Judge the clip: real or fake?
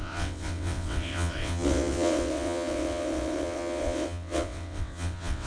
fake